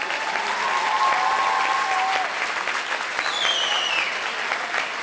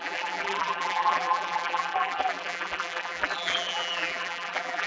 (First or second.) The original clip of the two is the first